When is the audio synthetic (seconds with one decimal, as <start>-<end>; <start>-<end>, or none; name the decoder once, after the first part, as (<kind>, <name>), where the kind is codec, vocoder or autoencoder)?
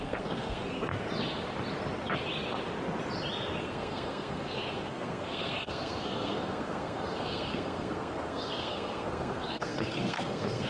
0.0-0.9 (codec, SNAC); 3.6-10.7